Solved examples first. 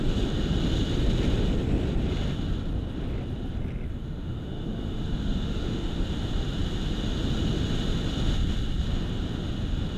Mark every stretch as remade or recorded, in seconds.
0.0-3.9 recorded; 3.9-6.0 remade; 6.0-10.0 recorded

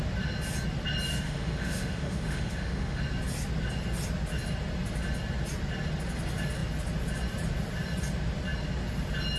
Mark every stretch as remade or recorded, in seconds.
0.0-1.1 recorded; 1.1-3.0 remade; 3.0-9.4 recorded

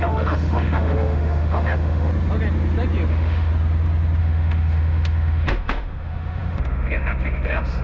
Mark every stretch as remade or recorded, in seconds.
0.0-2.1 remade; 2.1-3.1 recorded; 3.1-3.5 remade; 3.5-4.2 recorded; 4.2-7.8 remade

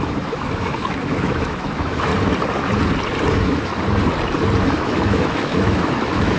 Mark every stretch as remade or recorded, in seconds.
0.0-2.1 remade; 2.1-3.3 recorded; 3.3-3.7 remade; 3.7-4.6 recorded; 4.6-6.4 remade

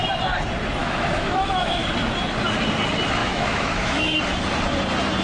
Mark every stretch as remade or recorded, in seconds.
0.0-0.8 recorded; 0.8-1.9 remade; 1.9-3.2 recorded; 3.2-4.2 remade; 4.2-5.2 recorded

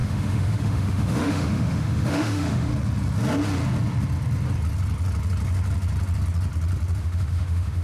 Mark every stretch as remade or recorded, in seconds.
0.0-2.7 remade; 2.7-7.0 recorded; 7.0-7.8 remade